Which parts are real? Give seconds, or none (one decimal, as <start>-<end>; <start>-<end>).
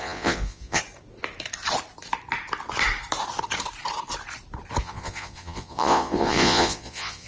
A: 0.8-4.8